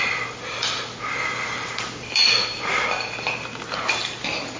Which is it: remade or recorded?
recorded